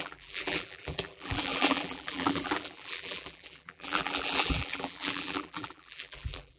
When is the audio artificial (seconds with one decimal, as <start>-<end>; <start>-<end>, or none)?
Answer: 0.0-6.6